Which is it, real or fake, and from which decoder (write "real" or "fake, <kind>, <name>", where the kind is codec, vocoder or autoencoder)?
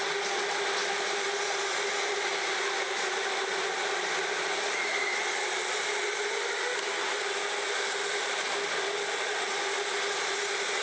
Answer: real